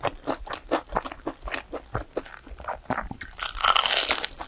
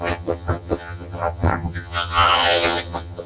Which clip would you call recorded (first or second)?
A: first